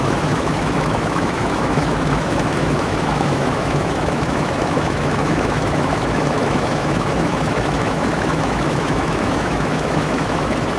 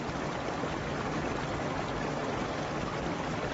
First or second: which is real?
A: second